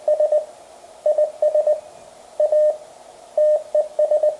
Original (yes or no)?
yes